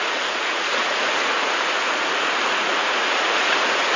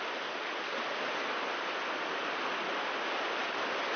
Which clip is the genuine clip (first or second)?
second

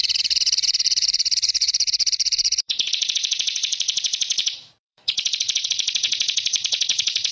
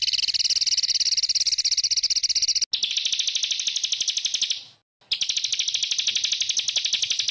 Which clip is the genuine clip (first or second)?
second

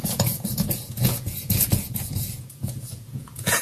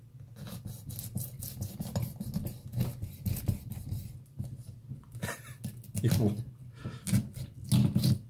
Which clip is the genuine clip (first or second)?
second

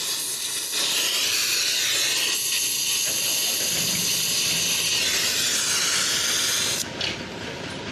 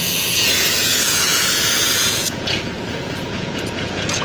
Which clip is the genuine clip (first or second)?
first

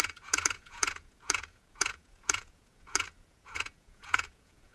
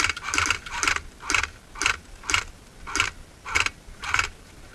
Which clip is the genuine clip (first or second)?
second